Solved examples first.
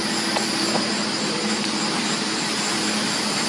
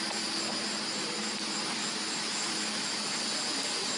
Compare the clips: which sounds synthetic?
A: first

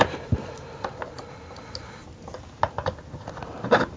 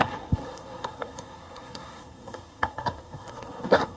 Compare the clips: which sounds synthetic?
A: second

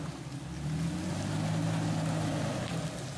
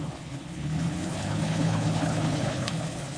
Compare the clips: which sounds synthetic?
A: second